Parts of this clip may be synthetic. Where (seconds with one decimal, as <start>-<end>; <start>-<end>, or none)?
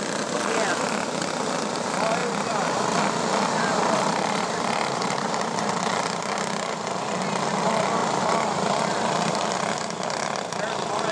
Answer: 2.2-2.8; 3.7-5.9